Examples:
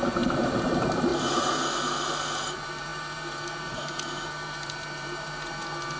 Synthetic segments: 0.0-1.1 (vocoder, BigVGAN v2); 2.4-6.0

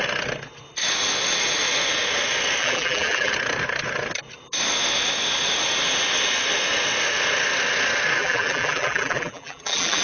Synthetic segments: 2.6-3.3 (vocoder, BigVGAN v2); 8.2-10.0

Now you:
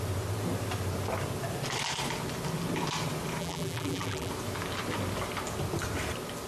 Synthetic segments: 3.4-4.3 (vocoder, BigVGAN v2)

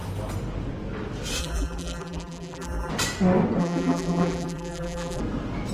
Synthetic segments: 1.4-2.9 (vocoder, BigVGAN v2); 3.6-5.2

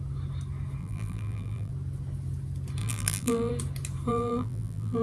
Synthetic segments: 0.8-1.7 (vocoder, BigVGAN v2); 2.8-3.5; 4.1-5.0